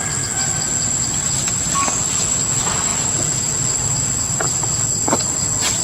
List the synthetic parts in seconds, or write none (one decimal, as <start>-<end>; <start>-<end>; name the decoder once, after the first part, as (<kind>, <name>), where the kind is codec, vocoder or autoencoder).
none